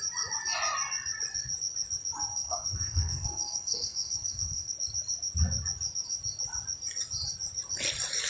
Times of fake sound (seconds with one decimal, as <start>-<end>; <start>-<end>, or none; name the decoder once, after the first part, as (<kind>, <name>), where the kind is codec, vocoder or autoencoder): 2.3-4.7 (codec, SNAC)